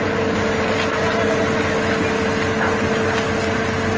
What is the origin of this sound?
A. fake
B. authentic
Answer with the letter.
B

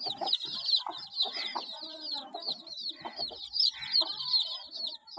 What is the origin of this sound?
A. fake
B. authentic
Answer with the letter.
B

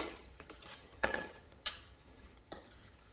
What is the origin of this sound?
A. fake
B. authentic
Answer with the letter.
A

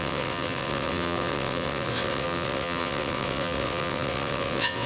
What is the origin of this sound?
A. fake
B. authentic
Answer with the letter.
A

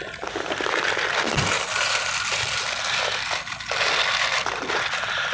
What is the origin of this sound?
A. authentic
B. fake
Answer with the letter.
A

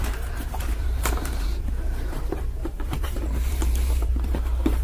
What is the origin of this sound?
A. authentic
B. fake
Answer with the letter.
B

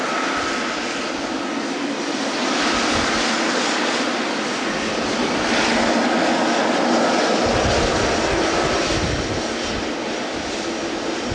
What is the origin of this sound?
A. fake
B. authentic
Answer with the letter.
B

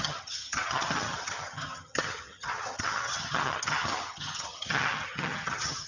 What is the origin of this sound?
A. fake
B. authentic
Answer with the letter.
A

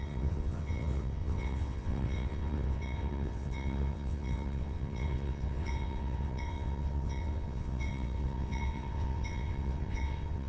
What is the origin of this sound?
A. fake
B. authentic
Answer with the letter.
A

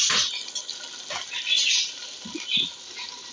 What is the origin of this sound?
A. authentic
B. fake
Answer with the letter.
A